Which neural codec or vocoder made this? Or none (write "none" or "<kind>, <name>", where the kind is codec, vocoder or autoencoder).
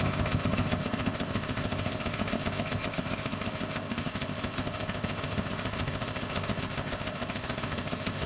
codec, ZipCodec